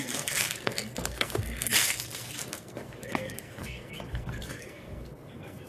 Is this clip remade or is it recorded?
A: remade